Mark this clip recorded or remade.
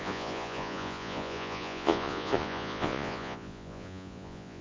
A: remade